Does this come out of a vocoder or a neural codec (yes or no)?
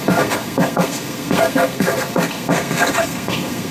yes